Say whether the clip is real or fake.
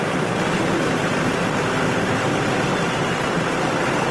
real